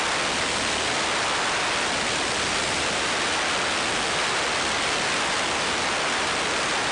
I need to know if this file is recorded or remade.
recorded